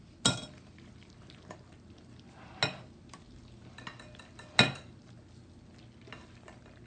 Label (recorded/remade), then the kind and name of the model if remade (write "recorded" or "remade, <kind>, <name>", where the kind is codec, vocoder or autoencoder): recorded